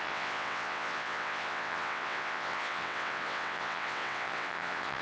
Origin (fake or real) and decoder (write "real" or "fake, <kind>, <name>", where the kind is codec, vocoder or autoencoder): fake, vocoder, WaveNeXt